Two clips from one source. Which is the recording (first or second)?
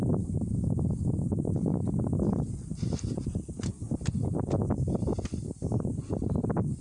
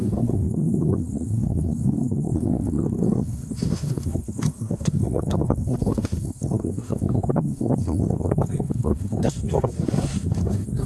first